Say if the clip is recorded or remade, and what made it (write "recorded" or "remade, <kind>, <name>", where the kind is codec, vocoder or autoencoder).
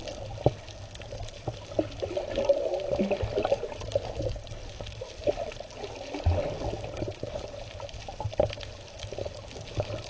recorded